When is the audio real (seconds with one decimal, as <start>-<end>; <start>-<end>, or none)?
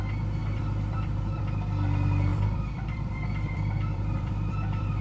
0.0-0.4; 1.4-2.3